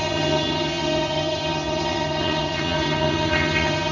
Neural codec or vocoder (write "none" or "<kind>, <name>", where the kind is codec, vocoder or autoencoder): vocoder, HiFi-GAN